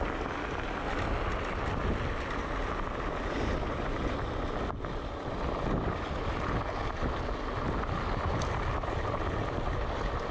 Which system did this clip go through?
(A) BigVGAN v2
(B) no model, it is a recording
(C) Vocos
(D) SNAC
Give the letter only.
B